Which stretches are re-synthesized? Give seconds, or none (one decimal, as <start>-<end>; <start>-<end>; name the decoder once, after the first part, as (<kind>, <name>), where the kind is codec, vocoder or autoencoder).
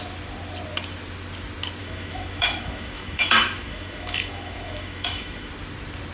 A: 1.8-5.5 (autoencoder, DAC-VAE)